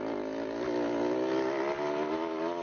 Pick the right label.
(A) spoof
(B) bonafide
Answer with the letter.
B